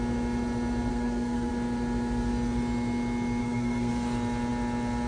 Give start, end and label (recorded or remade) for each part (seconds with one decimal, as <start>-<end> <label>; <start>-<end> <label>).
0.0-0.9 recorded; 0.9-1.5 remade; 1.5-3.4 recorded; 3.4-3.9 remade; 3.9-5.1 recorded